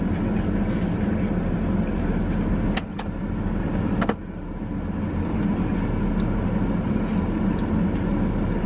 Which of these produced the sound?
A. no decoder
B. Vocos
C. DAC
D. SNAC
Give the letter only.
A